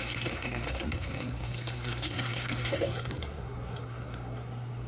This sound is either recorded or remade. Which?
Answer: remade